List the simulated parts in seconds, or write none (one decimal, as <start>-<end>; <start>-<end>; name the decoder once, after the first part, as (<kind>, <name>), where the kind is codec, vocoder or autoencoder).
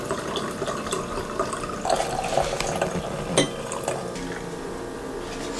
none